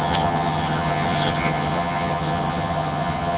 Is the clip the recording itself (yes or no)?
no